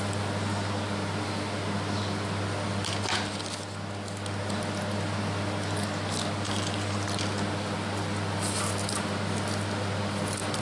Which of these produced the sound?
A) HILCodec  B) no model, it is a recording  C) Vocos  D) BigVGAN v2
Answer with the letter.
B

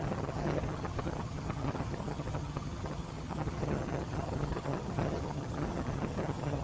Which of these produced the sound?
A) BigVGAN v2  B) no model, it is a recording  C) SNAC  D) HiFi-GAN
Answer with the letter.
D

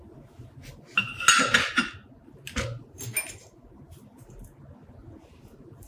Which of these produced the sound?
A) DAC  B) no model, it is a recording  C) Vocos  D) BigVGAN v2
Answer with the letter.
B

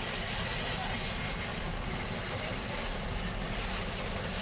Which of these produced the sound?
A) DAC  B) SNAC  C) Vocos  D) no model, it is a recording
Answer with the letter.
D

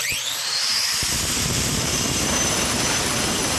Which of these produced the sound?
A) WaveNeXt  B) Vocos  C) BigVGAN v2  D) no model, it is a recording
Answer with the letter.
C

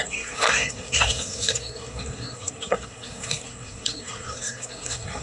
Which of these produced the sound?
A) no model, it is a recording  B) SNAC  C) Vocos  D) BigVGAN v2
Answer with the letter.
B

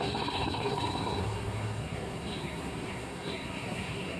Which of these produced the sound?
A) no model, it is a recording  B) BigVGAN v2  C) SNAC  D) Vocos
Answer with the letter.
C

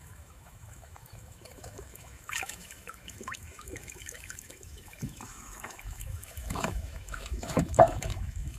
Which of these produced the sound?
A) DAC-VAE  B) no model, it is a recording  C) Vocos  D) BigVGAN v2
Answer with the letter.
A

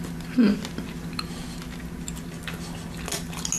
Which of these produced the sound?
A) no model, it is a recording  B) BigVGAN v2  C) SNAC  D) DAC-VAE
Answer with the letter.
A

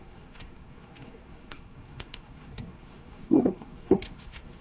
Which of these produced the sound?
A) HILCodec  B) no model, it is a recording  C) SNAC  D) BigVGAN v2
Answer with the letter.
C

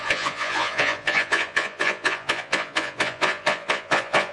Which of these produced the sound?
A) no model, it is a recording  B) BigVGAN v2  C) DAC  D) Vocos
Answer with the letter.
D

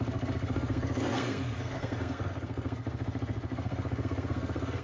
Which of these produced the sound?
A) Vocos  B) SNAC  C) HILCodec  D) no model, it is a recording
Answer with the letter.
B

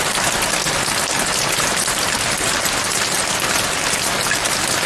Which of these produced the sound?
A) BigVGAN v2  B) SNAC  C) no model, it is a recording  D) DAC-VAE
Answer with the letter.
C